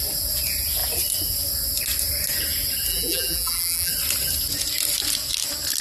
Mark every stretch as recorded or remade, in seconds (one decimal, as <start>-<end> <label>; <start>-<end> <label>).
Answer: 0.0-2.9 recorded; 2.9-3.9 remade; 3.9-5.8 recorded